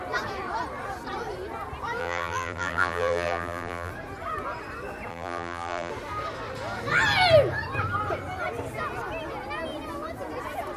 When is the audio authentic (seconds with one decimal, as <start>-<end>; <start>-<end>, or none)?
0.0-2.0; 3.9-5.1; 5.9-10.8